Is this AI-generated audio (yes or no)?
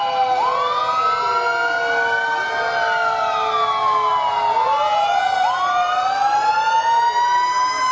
no